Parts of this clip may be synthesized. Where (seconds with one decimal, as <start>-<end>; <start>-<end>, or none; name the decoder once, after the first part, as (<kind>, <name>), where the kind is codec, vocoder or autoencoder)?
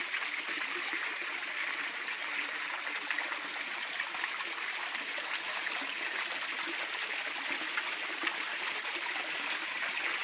none